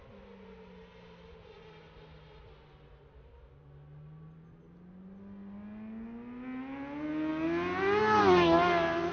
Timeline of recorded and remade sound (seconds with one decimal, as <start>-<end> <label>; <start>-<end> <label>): 0.0-9.1 recorded